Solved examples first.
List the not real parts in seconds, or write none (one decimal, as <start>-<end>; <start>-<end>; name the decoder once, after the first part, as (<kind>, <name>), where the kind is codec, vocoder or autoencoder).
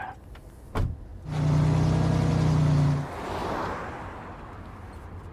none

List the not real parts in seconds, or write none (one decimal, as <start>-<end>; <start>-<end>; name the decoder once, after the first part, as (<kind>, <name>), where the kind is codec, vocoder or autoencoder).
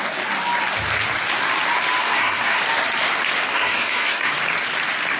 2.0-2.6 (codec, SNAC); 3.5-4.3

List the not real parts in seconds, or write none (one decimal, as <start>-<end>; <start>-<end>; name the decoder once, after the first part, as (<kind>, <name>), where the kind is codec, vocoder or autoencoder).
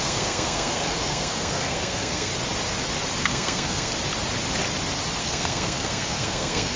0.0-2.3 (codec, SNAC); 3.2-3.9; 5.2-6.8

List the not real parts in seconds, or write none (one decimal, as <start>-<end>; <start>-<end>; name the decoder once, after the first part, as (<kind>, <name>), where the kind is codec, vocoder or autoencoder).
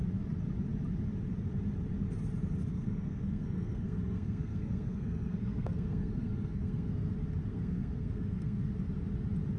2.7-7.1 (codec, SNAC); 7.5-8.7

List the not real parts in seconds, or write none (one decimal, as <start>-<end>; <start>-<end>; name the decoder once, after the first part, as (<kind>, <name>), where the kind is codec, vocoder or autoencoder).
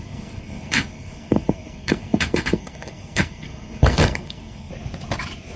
0.0-4.7 (codec, SNAC)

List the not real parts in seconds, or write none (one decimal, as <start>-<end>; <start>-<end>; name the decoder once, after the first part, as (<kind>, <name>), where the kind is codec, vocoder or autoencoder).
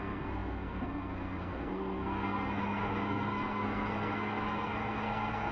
0.0-5.5 (codec, SNAC)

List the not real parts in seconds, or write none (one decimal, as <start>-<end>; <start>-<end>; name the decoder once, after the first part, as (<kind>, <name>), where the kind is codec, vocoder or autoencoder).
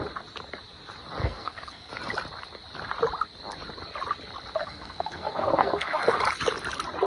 1.2-1.9 (codec, SNAC); 4.6-6.2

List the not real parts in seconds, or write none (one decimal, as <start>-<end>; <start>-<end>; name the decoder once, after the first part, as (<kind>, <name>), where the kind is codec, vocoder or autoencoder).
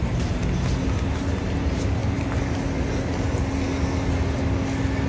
none